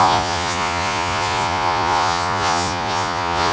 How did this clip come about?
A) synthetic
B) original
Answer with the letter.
A